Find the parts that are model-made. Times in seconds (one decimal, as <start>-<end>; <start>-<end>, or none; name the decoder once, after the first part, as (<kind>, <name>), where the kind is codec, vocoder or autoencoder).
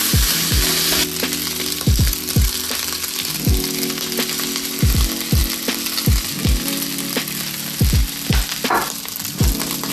none